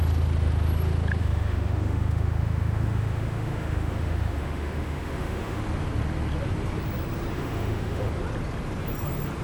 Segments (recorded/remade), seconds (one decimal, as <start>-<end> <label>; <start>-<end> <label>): 0.0-1.2 recorded; 1.2-5.6 remade; 5.6-7.3 recorded; 7.3-8.1 remade; 8.1-9.4 recorded